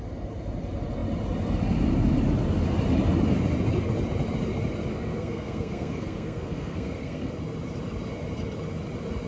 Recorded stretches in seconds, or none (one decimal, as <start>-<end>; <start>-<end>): 0.0-4.9; 7.3-9.3